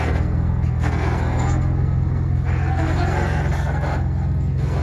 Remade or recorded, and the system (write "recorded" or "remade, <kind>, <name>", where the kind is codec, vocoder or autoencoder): remade, codec, SNAC